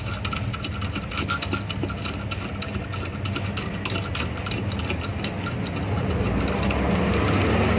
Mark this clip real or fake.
real